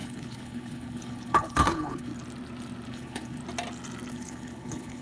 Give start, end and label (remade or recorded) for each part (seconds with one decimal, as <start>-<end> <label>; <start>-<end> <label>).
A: 0.0-2.1 remade; 2.1-2.9 recorded; 2.9-3.4 remade; 3.4-4.1 recorded; 4.1-5.0 remade